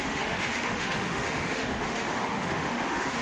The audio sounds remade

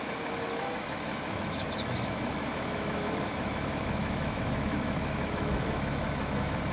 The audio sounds remade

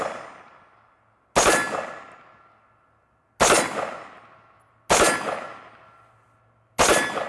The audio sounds recorded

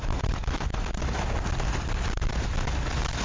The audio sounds recorded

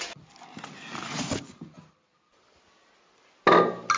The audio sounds recorded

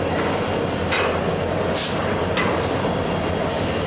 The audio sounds recorded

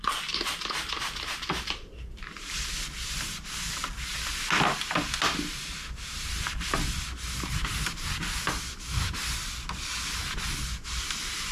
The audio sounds recorded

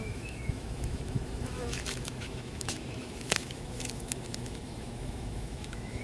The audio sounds remade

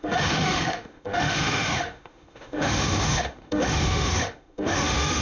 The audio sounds remade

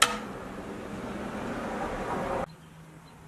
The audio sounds recorded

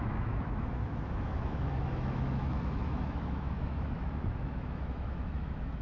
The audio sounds remade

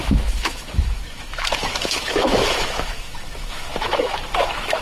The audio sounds remade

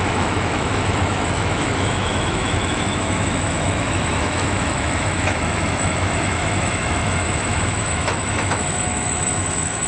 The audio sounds remade